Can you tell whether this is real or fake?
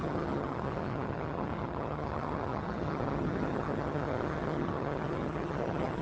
fake